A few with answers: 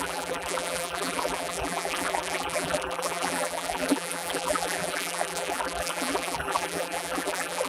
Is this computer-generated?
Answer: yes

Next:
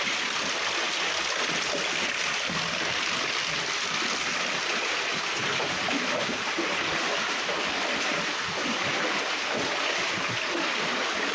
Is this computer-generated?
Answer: no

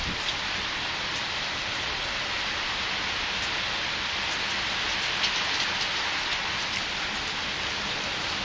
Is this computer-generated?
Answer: no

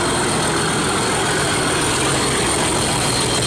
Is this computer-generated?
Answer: no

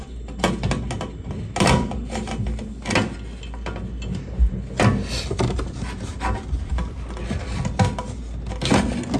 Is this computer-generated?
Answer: no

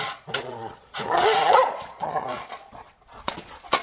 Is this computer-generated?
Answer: yes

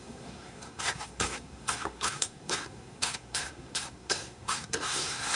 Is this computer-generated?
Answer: yes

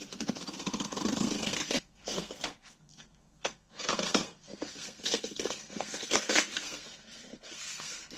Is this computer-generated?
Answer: yes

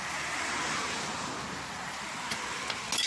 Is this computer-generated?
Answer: no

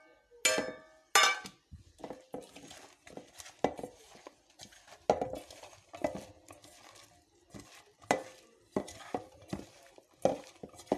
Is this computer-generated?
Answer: no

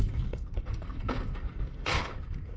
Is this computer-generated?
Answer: yes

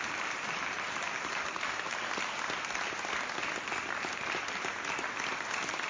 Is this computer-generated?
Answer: no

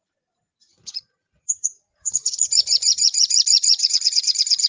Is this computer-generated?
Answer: yes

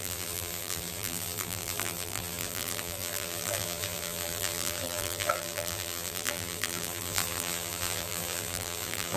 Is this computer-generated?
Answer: yes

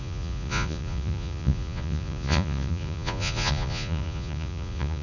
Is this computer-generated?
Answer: yes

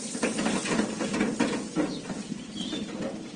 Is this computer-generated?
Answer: no